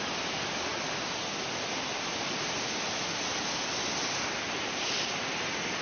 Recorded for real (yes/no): yes